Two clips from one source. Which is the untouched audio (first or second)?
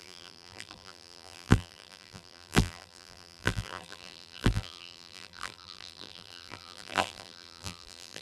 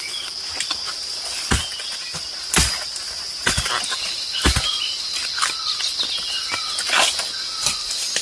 second